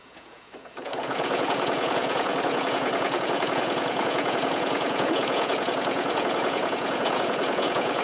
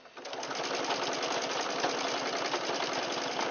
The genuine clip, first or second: second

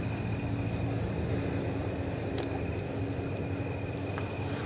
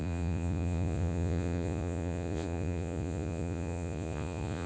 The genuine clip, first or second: first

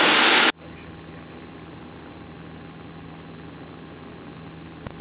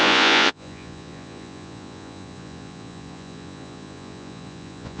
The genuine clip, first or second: first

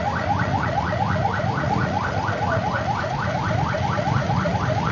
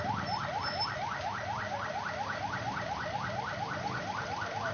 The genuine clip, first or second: second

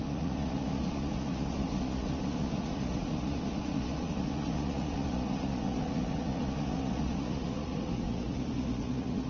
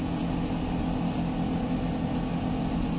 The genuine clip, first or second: second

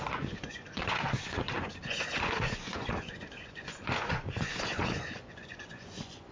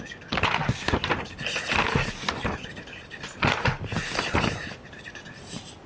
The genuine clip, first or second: second